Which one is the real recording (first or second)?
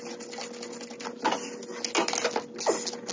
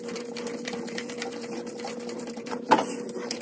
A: first